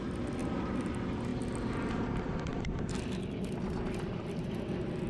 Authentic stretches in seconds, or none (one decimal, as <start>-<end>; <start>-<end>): 0.4-0.9; 1.3-1.9